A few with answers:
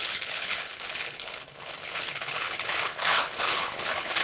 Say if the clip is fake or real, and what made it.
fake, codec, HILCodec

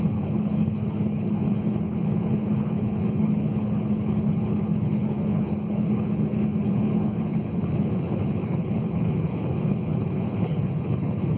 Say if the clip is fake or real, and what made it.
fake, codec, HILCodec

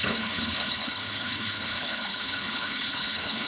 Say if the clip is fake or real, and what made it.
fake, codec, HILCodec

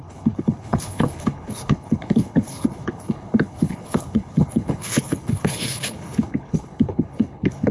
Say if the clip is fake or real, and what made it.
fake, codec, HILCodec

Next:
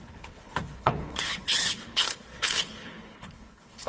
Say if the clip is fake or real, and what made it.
fake, codec, HILCodec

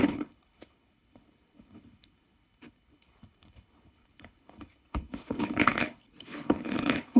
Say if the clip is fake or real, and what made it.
fake, codec, HILCodec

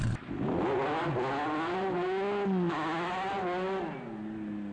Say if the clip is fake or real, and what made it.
real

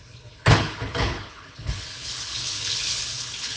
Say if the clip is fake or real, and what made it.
fake, codec, HILCodec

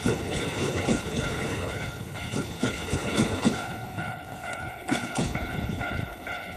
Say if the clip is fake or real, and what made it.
fake, codec, HILCodec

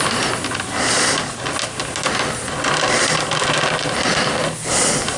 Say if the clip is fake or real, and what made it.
real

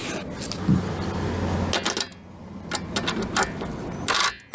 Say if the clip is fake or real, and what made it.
real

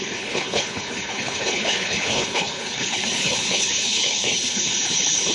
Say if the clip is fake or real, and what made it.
fake, codec, HILCodec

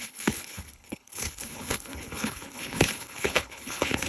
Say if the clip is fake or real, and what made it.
fake, codec, HILCodec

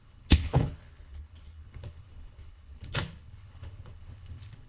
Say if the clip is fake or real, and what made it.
fake, codec, HILCodec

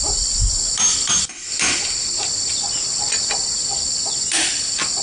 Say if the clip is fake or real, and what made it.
real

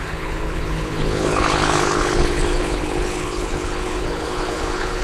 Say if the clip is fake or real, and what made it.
fake, codec, HILCodec